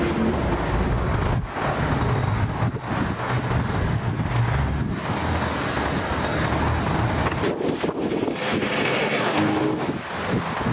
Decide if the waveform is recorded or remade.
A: recorded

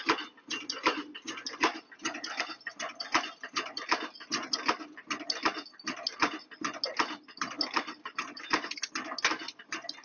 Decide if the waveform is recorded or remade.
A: recorded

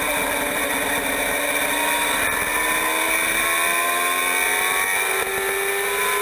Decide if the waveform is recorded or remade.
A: recorded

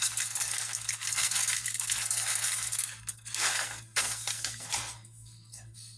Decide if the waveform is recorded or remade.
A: remade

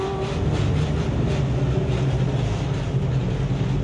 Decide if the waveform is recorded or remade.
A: recorded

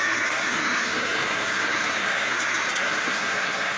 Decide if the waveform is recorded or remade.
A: remade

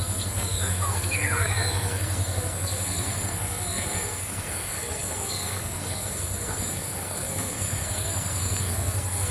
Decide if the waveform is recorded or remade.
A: remade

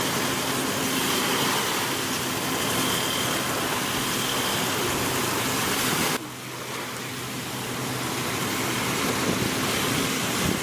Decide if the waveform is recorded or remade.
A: recorded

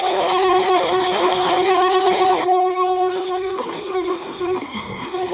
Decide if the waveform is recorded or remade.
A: remade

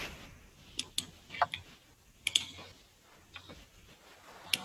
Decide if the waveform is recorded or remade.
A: recorded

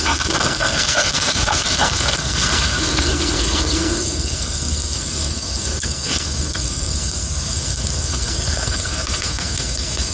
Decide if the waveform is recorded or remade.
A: remade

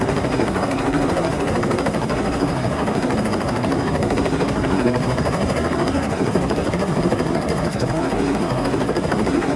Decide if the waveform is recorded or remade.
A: remade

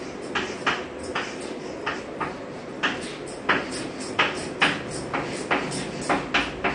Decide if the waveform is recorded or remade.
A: recorded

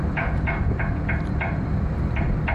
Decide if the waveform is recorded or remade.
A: recorded